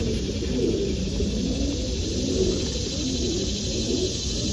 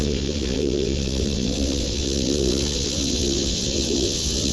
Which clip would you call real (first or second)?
first